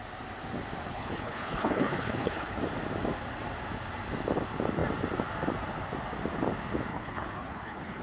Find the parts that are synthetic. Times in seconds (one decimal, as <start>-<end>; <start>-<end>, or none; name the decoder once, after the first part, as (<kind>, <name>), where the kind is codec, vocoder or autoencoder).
0.8-2.6 (codec, HILCodec); 6.9-8.0